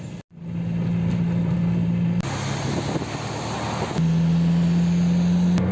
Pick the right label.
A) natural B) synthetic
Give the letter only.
A